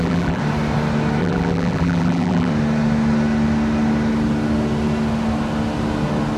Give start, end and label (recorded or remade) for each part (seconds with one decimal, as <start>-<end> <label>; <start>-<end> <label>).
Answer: 0.0-0.4 remade; 0.4-1.2 recorded; 1.2-2.5 remade; 2.5-6.4 recorded